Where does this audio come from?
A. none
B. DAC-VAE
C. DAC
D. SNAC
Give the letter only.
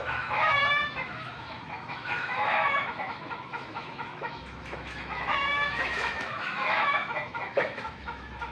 B